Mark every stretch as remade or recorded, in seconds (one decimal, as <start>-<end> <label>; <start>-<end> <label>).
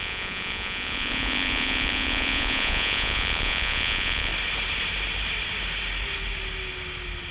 0.0-4.3 remade; 4.3-7.3 recorded